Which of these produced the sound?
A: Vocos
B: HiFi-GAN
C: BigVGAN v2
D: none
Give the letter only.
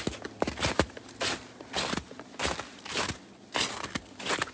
D